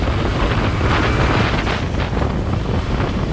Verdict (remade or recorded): recorded